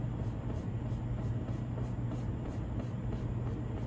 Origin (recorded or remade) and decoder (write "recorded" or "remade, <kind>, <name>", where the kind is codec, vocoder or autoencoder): recorded